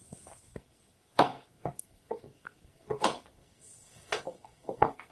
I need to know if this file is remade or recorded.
remade